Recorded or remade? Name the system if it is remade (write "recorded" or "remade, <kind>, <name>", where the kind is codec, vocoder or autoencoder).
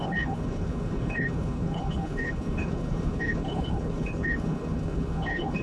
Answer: remade, codec, HILCodec